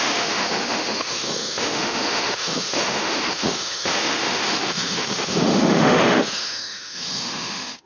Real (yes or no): no